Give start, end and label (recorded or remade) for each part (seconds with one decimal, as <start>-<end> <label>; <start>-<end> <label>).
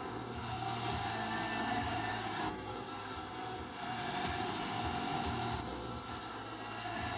0.0-2.1 recorded; 2.1-2.9 remade; 2.9-7.2 recorded